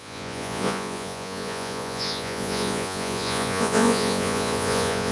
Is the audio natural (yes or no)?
no